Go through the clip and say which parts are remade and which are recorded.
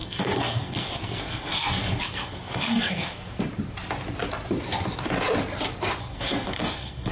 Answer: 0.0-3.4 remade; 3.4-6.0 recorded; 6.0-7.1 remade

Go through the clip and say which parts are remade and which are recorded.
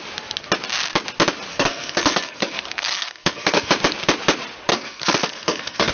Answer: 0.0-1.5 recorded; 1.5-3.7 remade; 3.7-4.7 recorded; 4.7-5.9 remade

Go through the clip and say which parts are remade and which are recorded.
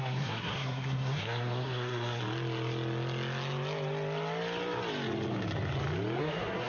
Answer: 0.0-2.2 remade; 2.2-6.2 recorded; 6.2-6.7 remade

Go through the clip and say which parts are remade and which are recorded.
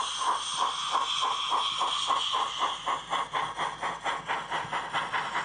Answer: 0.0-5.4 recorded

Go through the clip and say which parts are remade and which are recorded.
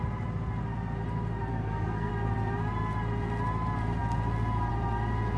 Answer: 0.0-1.5 recorded; 1.5-2.1 remade; 2.1-5.4 recorded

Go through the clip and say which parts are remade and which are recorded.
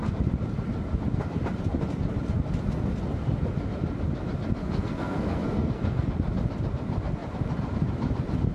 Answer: 0.0-4.6 recorded; 4.6-6.1 remade; 6.1-8.5 recorded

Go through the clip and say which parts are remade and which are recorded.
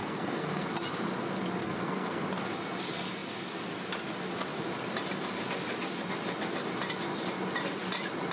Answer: 0.0-0.7 remade; 0.7-1.6 recorded; 1.6-2.2 remade; 2.2-8.3 recorded